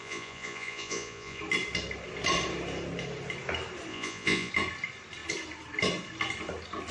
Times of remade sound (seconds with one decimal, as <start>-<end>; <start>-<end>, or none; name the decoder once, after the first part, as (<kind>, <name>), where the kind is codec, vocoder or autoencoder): 0.0-1.4 (vocoder, Vocos); 3.9-4.5